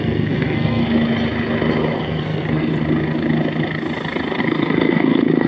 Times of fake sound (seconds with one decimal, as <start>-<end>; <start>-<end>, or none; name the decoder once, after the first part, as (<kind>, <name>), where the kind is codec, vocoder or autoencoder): 0.0-0.8 (codec, SNAC); 2.0-2.7; 4.4-5.5